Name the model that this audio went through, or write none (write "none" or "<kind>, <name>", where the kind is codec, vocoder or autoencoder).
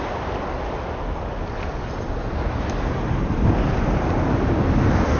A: none